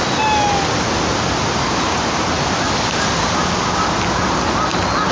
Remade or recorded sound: recorded